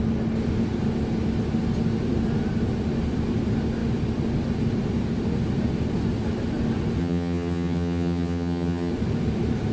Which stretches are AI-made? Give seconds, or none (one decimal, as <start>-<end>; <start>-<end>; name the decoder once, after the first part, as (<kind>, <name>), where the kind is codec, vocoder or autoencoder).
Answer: 7.0-8.9 (vocoder, HiFi-GAN)

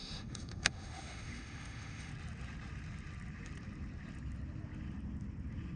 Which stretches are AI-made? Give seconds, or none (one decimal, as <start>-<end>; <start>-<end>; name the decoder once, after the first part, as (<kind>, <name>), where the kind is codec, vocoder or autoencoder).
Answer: 0.0-2.1 (autoencoder, DAC-VAE)

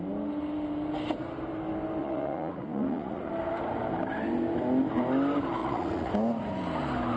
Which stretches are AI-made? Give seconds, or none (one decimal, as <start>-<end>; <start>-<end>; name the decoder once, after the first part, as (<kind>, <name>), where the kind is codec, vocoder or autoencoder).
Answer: 2.0-3.3 (vocoder, Vocos); 5.6-6.1

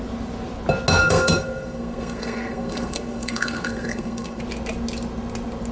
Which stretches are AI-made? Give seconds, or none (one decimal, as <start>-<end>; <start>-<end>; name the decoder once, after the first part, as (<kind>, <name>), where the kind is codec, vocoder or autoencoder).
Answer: 1.0-4.4 (codec, SNAC)

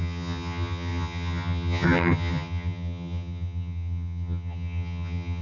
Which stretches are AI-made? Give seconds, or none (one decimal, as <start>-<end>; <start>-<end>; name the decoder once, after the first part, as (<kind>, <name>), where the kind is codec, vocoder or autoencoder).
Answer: 0.0-5.4 (vocoder, HiFi-GAN)